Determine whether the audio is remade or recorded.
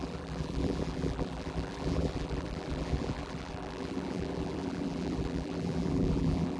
remade